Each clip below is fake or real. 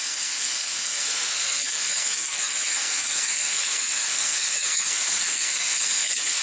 fake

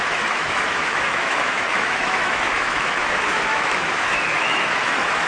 fake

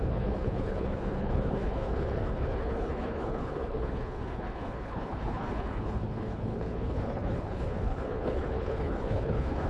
fake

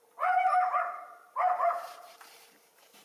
fake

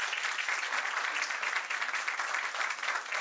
real